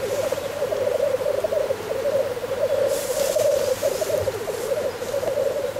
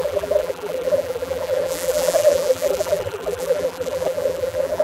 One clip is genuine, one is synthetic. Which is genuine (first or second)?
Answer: first